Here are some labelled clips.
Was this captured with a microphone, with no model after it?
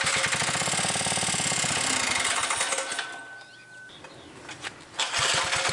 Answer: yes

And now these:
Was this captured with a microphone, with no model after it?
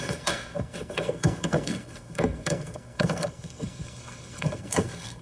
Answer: no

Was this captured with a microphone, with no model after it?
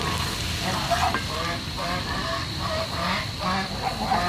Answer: yes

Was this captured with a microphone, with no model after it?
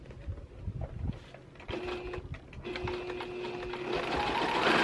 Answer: yes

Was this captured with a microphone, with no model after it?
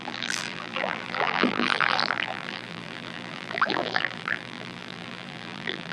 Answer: no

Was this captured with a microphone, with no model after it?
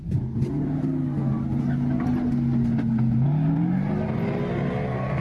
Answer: yes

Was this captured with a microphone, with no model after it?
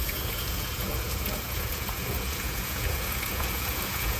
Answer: no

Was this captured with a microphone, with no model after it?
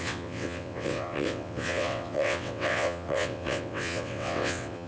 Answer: no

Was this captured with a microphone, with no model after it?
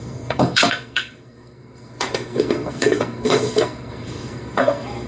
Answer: no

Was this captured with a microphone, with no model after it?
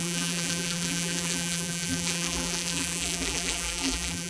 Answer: no